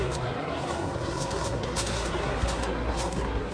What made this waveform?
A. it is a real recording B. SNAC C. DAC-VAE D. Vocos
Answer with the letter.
B